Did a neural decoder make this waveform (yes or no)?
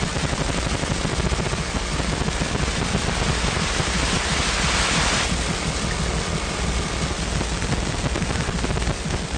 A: no